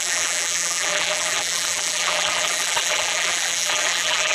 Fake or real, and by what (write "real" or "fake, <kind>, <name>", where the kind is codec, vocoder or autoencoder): fake, vocoder, BigVGAN v2